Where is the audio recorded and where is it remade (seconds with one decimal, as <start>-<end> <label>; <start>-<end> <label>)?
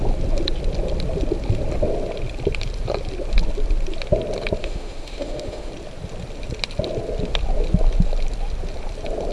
0.0-4.6 recorded; 4.6-5.7 remade; 5.7-9.3 recorded